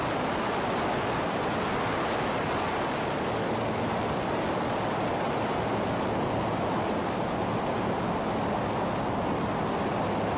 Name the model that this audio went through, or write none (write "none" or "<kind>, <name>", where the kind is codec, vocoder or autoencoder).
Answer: none